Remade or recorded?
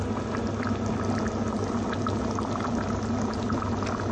recorded